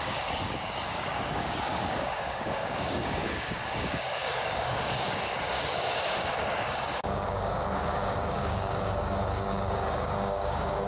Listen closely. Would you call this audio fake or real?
fake